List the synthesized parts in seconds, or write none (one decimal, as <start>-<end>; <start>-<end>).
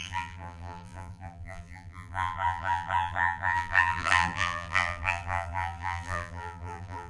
0.0-7.1